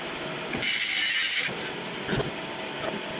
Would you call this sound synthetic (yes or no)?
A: no